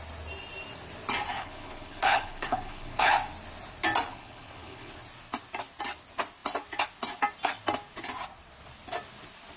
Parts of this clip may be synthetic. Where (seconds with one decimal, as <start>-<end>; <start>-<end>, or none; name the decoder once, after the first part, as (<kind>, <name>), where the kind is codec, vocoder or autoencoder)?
1.3-3.1 (codec, HILCodec); 4.1-4.9